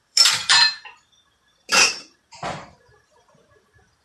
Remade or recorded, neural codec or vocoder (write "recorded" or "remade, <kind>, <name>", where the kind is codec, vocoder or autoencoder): remade, vocoder, BigVGAN v2